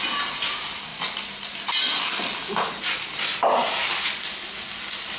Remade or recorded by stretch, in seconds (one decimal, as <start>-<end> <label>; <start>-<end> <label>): 0.0-5.2 recorded